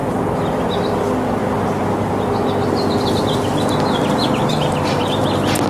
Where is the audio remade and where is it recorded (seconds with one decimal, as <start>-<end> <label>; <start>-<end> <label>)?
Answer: 0.0-5.7 recorded